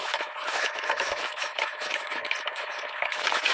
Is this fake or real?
fake